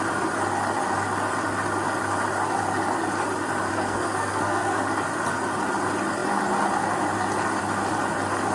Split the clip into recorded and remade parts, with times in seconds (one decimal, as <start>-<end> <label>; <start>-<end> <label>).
0.0-3.7 recorded; 3.7-4.8 remade; 4.8-8.5 recorded